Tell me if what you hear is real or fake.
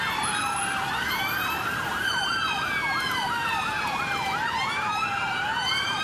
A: real